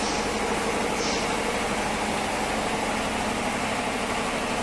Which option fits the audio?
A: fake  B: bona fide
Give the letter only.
B